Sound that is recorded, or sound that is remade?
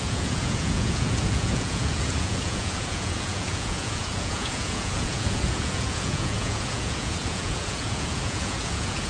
remade